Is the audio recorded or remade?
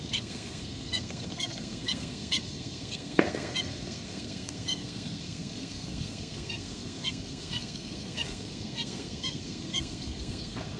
remade